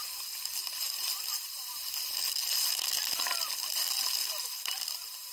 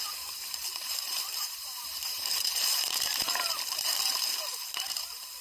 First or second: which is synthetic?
second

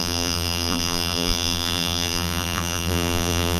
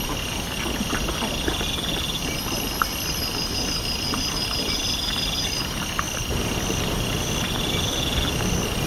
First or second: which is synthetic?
first